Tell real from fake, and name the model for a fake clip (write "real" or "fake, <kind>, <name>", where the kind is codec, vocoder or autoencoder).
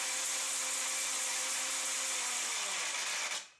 real